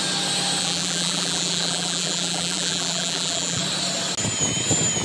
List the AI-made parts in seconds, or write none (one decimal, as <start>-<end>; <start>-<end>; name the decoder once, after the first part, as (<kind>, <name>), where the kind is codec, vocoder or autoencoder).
0.6-3.6 (vocoder, BigVGAN v2)